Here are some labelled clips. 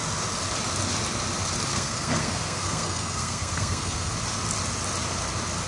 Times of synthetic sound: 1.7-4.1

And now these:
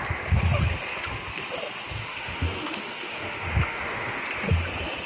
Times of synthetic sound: 2.0-4.2

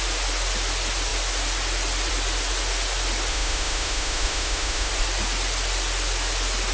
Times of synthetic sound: 3.3-4.9

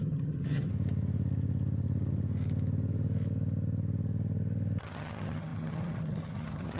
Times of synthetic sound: 0.0-0.7; 4.8-6.8

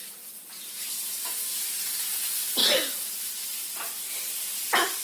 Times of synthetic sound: none

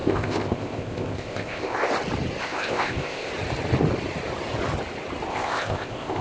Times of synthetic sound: 0.0-1.9; 2.4-3.3; 5.3-6.2

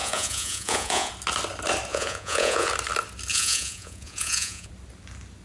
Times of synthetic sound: 0.0-1.1; 1.9-2.7; 3.3-4.7

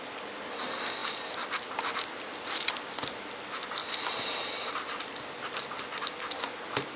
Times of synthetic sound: none